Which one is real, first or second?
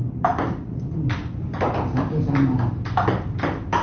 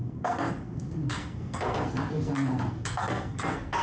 first